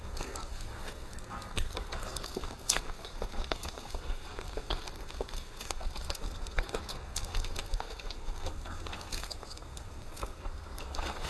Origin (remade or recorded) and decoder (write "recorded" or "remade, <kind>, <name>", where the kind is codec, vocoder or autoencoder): remade, codec, SNAC